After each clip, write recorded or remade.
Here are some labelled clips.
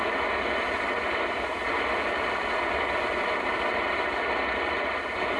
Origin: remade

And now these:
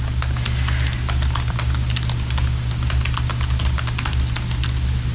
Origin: recorded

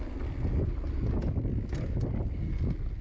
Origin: recorded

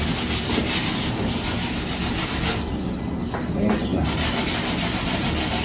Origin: recorded